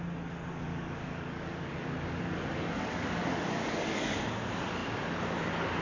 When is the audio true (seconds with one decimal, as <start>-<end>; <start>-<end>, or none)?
0.0-0.7; 4.2-5.8

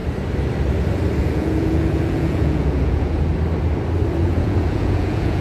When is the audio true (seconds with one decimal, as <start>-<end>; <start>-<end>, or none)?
0.0-1.2; 3.3-4.2

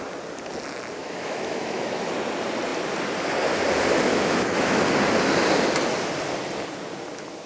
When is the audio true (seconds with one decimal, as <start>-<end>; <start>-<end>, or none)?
0.0-1.0; 2.1-4.1; 4.8-7.5